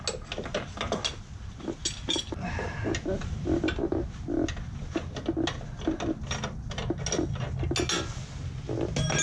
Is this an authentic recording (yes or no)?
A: yes